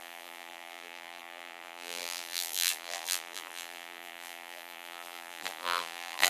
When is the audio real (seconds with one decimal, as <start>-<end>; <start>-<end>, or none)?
none